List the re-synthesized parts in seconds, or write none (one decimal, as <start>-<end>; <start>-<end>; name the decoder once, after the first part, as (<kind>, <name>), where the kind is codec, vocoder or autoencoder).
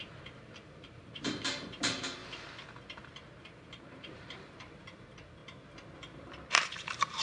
0.0-2.2 (vocoder, BigVGAN v2); 3.4-5.4; 5.9-7.2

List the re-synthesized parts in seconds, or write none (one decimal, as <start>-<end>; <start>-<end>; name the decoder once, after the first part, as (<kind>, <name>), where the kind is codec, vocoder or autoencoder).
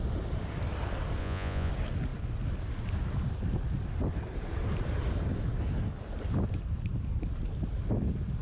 1.2-1.7 (vocoder, Vocos)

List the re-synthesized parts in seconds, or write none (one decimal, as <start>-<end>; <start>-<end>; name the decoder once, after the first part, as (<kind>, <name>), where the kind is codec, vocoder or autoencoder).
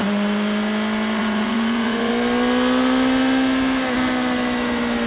1.2-2.1 (vocoder, Vocos)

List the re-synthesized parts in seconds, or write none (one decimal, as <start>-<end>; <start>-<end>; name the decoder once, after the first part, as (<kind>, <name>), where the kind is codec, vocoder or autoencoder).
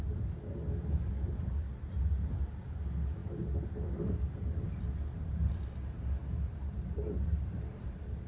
3.2-4.6 (vocoder, BigVGAN v2); 6.2-7.9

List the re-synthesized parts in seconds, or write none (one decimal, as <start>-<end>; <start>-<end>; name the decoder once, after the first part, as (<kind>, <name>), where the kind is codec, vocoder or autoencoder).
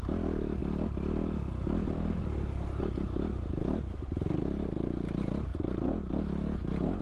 none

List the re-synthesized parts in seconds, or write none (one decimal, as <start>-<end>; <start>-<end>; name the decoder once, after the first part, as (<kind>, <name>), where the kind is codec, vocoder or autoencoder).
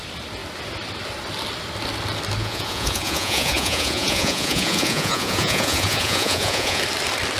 2.4-6.8 (vocoder, Vocos)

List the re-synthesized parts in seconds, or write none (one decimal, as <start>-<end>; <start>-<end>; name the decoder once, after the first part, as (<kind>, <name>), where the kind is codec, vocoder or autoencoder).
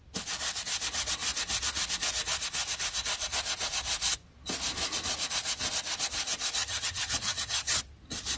6.6-7.8 (vocoder, HiFi-GAN)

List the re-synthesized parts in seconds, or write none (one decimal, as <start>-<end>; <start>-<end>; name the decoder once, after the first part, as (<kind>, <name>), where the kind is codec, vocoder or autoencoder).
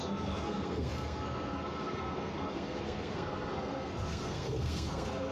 0.0-5.3 (codec, SNAC)